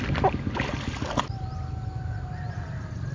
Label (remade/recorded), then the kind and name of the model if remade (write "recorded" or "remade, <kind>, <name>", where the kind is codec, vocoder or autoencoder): recorded